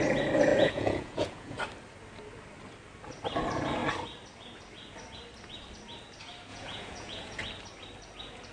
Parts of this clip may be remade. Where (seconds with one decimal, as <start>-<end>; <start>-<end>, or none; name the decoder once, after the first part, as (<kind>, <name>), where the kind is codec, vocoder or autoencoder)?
0.5-1.6 (vocoder, Vocos); 6.5-7.4